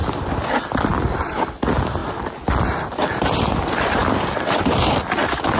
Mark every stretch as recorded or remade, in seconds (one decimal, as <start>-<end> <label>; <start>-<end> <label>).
0.0-5.6 recorded